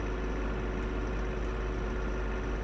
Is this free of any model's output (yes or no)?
yes